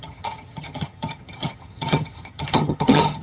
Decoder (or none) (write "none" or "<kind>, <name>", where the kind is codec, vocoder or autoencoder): vocoder, HiFi-GAN